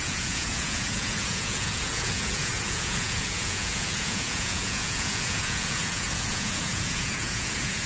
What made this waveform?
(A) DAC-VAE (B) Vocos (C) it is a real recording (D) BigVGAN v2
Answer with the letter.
B